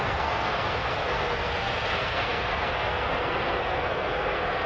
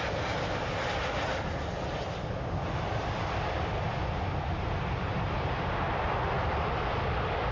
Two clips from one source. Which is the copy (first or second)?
first